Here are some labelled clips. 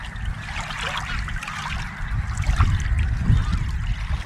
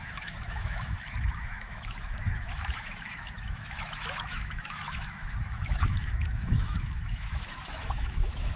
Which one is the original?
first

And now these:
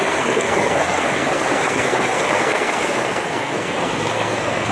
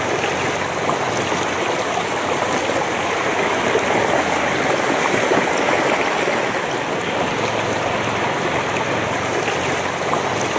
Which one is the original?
second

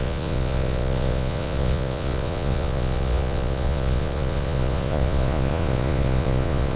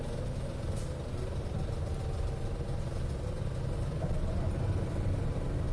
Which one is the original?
second